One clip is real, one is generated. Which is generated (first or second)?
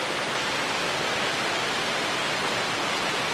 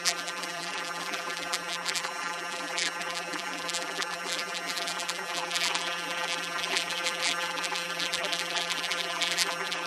second